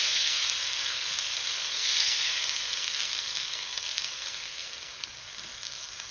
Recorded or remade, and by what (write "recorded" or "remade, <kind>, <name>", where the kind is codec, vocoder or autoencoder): remade, codec, SNAC